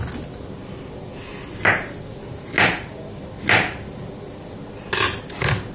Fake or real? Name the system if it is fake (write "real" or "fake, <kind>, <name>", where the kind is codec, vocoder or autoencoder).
real